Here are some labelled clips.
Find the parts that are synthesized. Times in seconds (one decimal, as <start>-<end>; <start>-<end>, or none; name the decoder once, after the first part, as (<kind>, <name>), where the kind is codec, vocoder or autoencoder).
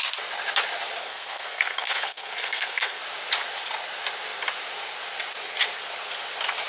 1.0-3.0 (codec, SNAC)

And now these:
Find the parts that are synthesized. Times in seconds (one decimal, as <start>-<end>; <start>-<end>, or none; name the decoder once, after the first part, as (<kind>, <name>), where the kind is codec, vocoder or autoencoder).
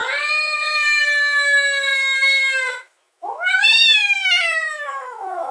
1.9-5.5 (autoencoder, DAC-VAE)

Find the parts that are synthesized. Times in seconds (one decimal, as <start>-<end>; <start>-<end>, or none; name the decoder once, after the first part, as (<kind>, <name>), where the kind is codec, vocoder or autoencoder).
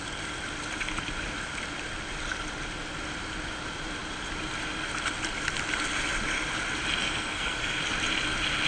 7.0-7.8 (codec, SNAC)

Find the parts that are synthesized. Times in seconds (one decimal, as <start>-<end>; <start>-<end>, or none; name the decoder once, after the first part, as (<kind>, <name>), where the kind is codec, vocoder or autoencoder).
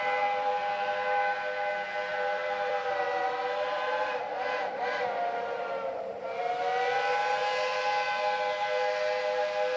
2.1-6.4 (vocoder, BigVGAN v2)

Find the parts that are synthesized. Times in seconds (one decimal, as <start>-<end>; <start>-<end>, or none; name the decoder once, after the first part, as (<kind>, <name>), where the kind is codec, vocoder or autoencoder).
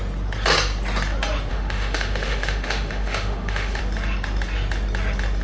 1.5-3.8 (autoencoder, DAC-VAE)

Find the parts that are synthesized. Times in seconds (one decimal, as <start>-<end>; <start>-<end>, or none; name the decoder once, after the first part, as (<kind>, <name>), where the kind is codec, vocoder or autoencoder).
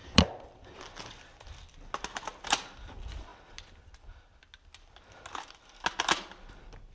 0.0-0.8 (vocoder, BigVGAN v2)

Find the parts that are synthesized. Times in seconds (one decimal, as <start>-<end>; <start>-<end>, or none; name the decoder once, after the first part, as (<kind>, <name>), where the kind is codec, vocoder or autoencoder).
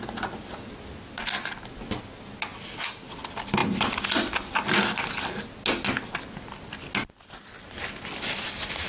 none